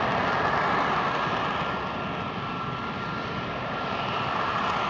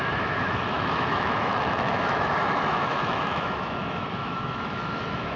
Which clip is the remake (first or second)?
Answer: second